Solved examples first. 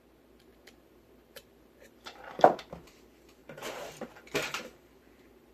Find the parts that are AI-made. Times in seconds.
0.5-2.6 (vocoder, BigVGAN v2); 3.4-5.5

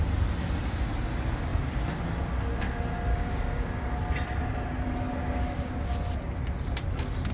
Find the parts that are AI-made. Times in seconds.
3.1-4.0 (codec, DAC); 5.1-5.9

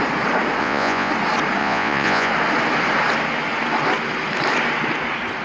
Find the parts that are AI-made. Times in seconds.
0.6-1.1 (vocoder, Vocos); 1.6-2.3

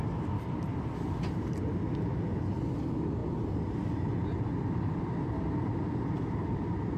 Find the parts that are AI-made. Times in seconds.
0.0-0.7 (vocoder, BigVGAN v2); 2.8-3.2; 5.8-7.0